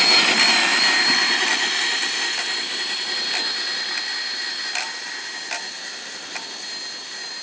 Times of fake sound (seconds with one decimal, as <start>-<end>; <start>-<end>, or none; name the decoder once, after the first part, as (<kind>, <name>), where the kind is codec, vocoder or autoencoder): 0.7-4.6 (vocoder, BigVGAN v2)